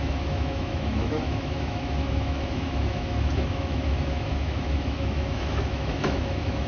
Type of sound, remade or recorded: remade